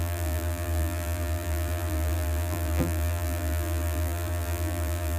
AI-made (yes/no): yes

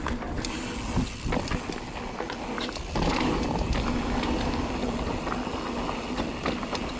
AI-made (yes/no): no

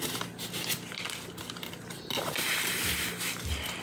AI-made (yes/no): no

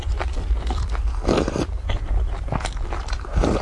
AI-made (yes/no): yes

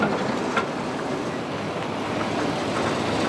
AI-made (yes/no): no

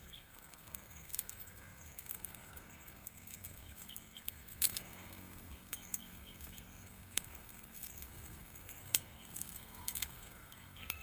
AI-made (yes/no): yes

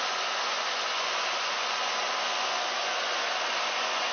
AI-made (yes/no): yes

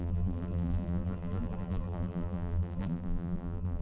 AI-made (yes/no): yes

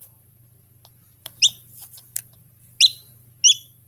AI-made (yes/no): no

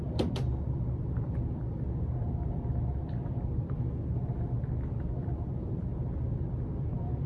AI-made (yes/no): yes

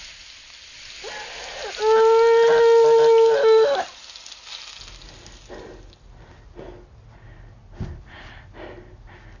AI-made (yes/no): no